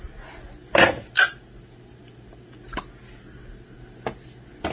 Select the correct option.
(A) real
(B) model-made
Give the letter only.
A